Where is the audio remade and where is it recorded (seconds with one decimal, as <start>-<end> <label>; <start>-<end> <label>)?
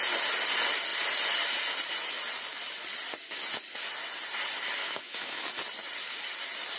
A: 0.0-4.8 recorded; 4.8-5.4 remade; 5.4-6.8 recorded